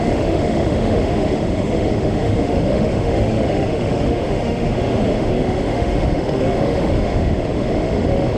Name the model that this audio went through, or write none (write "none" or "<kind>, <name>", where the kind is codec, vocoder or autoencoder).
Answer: autoencoder, DAC-VAE